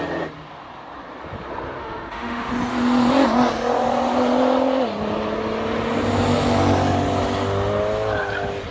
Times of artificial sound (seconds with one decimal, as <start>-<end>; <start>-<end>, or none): 1.8-2.5